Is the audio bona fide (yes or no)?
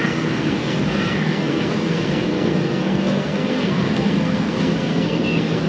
no